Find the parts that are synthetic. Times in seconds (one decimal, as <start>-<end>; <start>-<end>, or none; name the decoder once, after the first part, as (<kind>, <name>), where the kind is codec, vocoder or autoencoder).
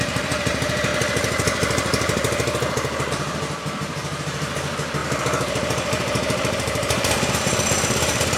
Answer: 0.0-0.9 (vocoder, BigVGAN v2); 3.1-8.4